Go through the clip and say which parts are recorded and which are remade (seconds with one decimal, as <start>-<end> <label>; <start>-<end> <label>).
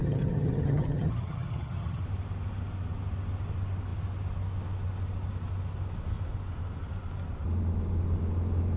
0.0-2.0 remade; 2.0-8.8 recorded